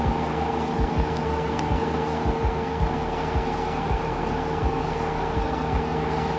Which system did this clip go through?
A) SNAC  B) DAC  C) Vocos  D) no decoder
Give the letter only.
A